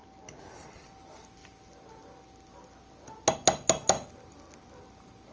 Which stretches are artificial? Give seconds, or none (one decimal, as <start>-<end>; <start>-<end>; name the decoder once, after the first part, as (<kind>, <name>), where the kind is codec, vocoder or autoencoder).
none